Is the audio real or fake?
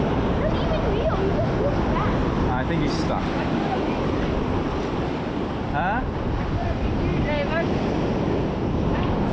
real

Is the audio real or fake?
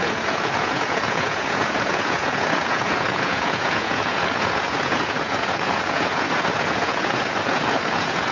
fake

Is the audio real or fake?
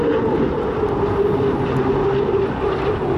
real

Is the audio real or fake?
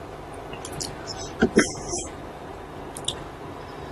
real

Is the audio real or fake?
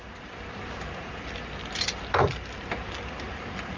real